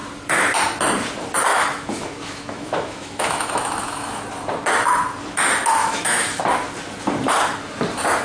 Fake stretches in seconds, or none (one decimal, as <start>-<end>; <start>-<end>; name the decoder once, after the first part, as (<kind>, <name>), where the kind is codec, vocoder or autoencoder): 1.5-4.2 (autoencoder, DAC-VAE); 5.8-6.4